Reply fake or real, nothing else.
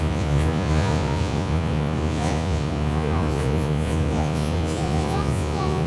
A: fake